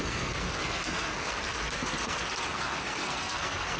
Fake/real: fake